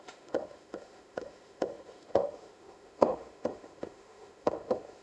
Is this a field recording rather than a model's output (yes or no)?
no